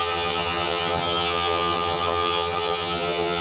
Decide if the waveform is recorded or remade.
remade